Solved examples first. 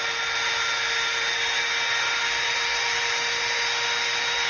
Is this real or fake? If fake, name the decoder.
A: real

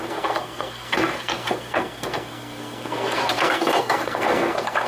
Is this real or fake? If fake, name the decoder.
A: fake, codec, SNAC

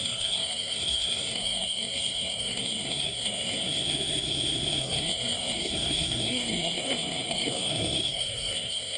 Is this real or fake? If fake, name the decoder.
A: fake, codec, SNAC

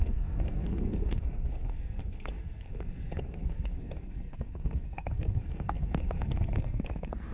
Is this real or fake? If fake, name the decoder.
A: fake, codec, SNAC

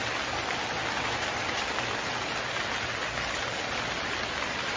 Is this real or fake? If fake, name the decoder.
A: real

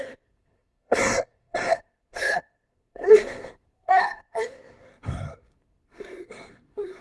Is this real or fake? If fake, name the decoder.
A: fake, codec, SNAC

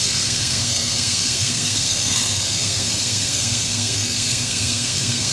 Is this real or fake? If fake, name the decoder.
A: fake, codec, SNAC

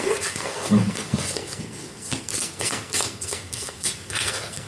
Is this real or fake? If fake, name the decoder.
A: fake, codec, SNAC